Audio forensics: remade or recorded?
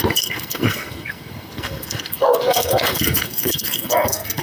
remade